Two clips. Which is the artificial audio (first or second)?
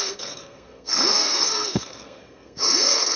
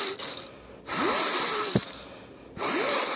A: first